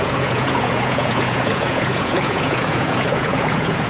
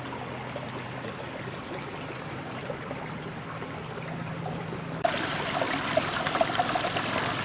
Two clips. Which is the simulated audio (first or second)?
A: first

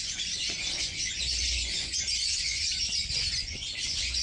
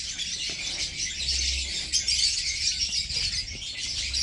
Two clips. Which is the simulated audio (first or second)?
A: first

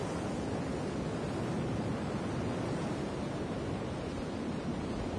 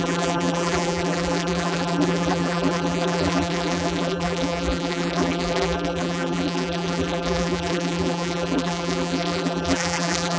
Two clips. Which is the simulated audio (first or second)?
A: second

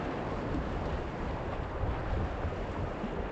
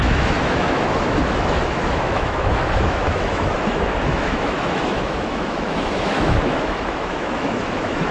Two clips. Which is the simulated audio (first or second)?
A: second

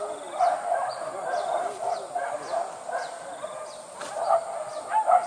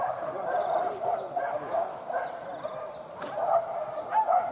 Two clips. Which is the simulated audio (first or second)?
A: second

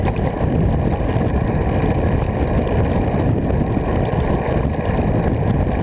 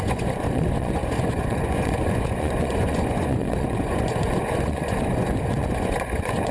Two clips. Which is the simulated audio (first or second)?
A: second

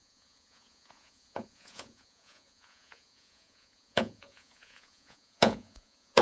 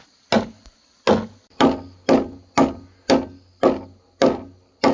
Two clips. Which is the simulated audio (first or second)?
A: first